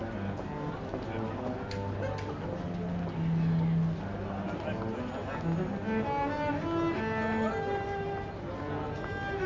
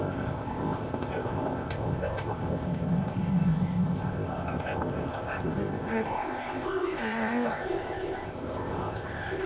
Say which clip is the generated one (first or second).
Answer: second